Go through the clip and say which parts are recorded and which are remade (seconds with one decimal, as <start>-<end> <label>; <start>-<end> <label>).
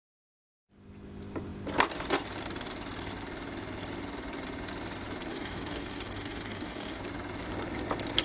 0.0-5.3 recorded; 5.3-7.0 remade; 7.0-8.2 recorded